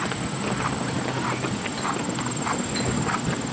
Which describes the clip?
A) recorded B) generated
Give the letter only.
A